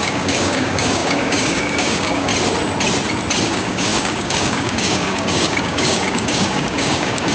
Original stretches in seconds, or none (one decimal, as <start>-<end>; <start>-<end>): 2.3-3.4